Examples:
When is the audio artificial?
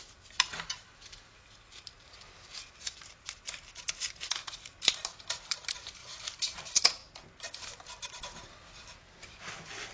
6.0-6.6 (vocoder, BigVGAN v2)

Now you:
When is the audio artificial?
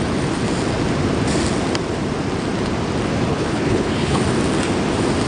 3.3-4.2 (codec, HILCodec)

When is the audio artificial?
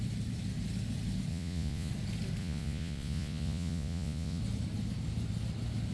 1.3-1.9 (vocoder, Vocos); 2.4-4.4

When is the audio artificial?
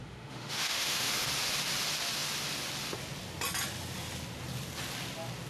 0.0-1.1 (autoencoder, DAC-VAE)